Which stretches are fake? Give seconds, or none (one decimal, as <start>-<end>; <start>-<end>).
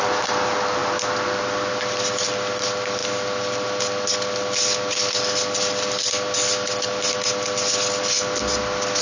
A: none